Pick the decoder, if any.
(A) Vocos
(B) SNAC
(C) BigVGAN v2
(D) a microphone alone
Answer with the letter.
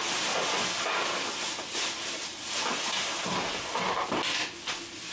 D